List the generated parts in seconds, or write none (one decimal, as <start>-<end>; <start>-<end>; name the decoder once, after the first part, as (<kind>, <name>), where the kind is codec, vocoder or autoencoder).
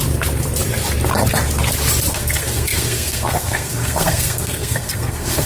2.1-5.5 (codec, SNAC)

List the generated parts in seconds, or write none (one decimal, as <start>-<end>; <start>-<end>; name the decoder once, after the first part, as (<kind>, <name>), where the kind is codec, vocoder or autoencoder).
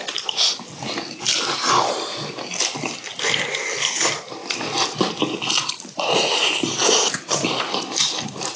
6.8-8.0 (vocoder, BigVGAN v2)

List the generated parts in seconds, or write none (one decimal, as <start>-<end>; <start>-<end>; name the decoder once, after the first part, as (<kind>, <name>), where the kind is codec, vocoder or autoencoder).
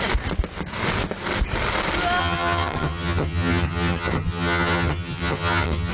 2.2-5.9 (vocoder, HiFi-GAN)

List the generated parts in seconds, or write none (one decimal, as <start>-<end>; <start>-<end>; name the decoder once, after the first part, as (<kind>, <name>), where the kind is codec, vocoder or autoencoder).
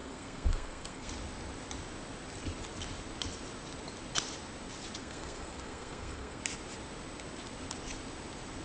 0.0-1.1 (codec, SNAC); 5.0-6.4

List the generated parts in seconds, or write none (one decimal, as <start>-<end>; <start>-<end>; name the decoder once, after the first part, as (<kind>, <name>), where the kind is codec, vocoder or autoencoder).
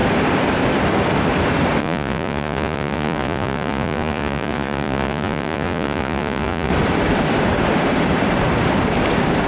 1.8-6.7 (vocoder, Vocos)